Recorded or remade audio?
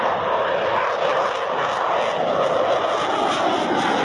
recorded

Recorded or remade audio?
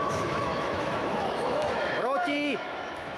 remade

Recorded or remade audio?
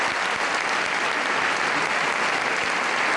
recorded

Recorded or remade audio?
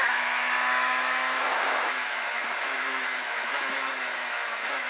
remade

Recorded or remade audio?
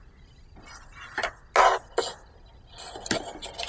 recorded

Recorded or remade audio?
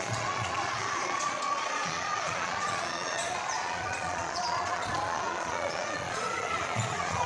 remade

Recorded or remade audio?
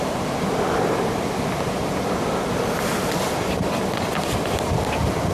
recorded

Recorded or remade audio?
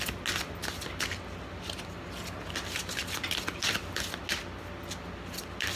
recorded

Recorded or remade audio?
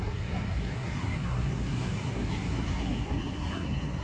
remade